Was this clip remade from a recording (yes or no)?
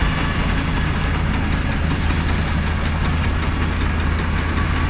no